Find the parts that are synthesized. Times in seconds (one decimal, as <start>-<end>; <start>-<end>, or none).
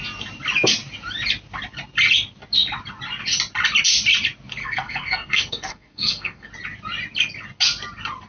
4.6-6.5